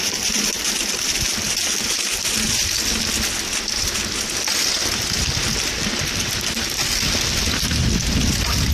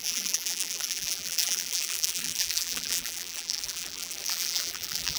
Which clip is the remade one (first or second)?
second